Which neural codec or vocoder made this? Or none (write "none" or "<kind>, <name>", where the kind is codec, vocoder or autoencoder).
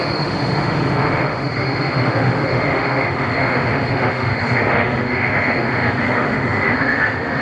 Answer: autoencoder, DAC-VAE